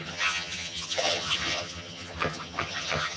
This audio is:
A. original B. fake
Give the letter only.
B